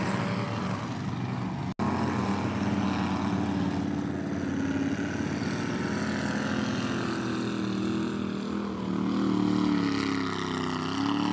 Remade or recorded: recorded